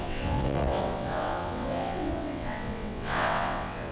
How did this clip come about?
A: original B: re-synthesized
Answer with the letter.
B